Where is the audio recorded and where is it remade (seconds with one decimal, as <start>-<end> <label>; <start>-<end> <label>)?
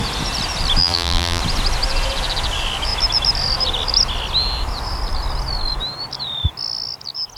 0.0-0.8 recorded; 0.8-1.4 remade; 1.4-7.4 recorded